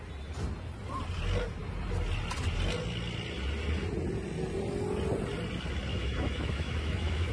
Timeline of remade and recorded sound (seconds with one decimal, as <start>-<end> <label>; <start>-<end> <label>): 0.0-5.9 recorded; 5.9-7.3 remade